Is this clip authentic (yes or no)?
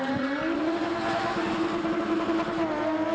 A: yes